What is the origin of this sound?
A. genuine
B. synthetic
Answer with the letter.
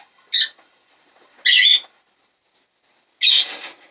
A